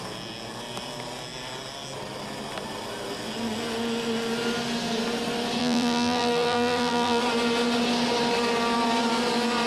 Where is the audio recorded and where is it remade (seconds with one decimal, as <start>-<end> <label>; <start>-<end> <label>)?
0.0-5.6 recorded; 5.6-7.2 remade; 7.2-9.7 recorded